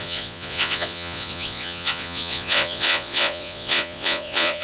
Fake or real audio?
fake